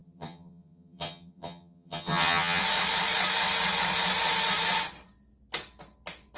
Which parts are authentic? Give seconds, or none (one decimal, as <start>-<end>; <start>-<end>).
2.6-6.4

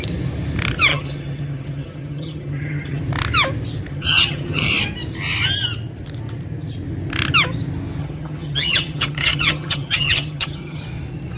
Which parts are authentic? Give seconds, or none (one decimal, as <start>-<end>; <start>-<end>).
0.0-0.9; 3.0-3.9; 4.7-8.0; 10.8-11.4

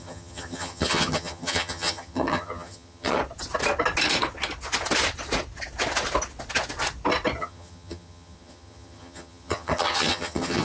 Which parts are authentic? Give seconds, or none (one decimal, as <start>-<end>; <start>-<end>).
3.2-7.4